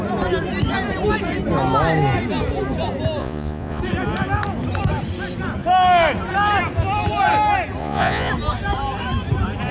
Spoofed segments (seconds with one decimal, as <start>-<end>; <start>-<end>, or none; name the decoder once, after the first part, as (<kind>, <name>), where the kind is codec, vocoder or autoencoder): 3.2-3.8 (vocoder, Vocos); 7.8-8.3